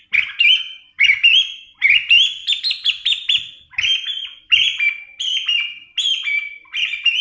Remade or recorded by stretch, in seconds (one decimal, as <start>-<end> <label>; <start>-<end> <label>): 0.0-2.4 recorded; 2.4-4.9 remade; 4.9-7.2 recorded